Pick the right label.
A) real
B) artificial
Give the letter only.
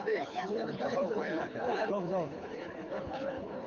B